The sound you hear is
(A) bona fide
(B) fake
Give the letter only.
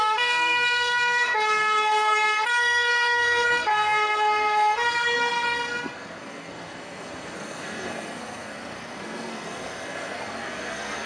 B